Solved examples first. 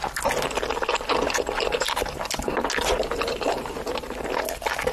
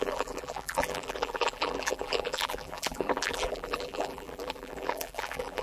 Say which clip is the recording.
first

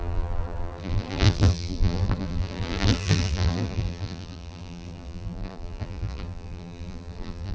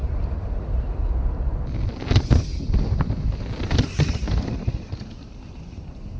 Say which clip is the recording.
second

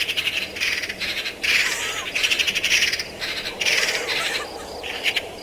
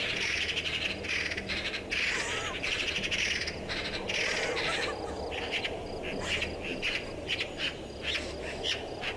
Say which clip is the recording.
second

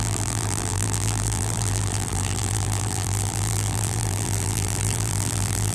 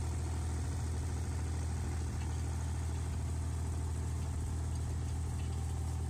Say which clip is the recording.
second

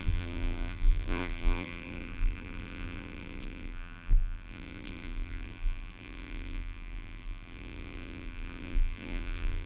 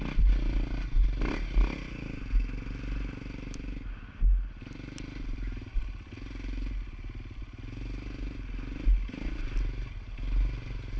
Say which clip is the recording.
second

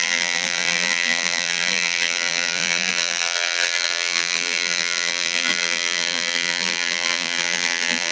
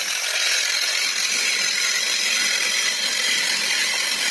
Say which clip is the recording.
second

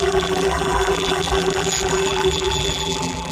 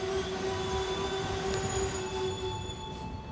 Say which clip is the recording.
second